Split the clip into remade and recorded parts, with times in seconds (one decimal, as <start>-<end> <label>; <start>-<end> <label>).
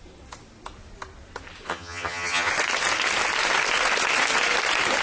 0.0-1.7 recorded; 1.7-2.5 remade; 2.5-5.0 recorded